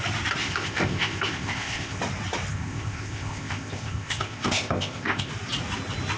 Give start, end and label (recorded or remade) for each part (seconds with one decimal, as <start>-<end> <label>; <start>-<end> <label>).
0.0-0.4 recorded; 0.4-2.0 remade; 2.0-2.5 recorded; 2.5-5.3 remade; 5.3-6.2 recorded